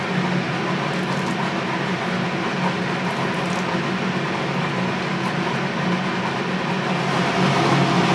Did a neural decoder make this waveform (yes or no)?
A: no